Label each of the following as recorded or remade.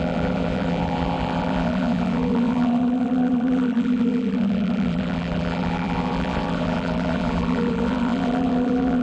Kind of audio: remade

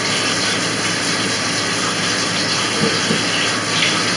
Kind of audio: recorded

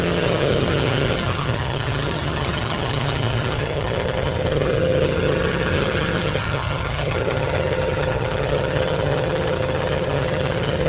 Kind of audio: remade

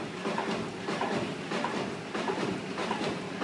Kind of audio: recorded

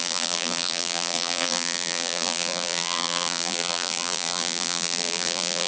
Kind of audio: remade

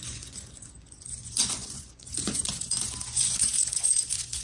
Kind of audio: remade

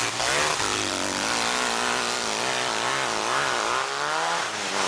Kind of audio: recorded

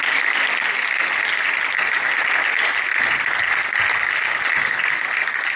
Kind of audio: recorded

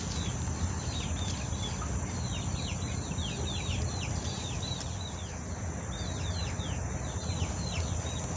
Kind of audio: recorded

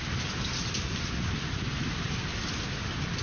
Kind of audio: remade